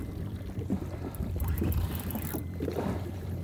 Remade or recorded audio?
remade